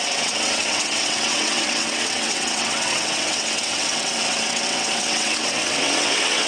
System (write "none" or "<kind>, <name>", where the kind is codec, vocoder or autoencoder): vocoder, WaveNeXt